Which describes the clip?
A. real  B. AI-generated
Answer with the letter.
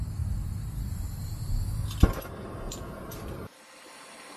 A